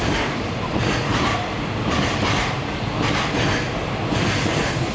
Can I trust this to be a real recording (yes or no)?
yes